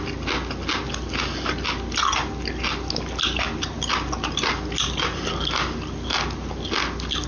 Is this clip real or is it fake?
real